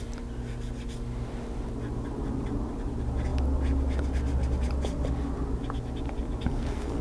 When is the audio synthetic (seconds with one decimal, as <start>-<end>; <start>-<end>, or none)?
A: 6.5-7.0